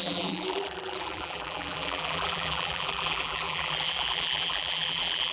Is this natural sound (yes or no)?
no